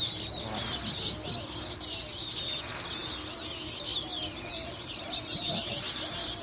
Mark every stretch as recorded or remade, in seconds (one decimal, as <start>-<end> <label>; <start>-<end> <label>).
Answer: 0.0-6.4 recorded